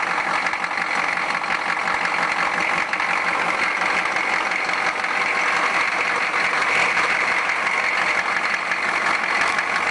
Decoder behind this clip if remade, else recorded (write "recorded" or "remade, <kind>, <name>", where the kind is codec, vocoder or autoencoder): recorded